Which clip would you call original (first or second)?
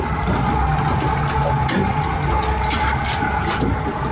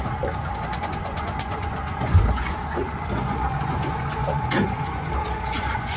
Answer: first